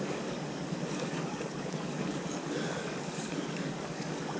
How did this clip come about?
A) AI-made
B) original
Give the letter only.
A